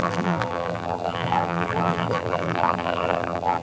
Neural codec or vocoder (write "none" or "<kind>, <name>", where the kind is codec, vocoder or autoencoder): vocoder, BigVGAN v2